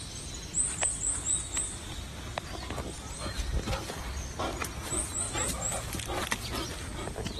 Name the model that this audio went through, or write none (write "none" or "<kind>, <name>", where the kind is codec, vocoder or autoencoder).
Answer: none